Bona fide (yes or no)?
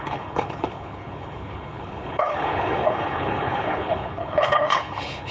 no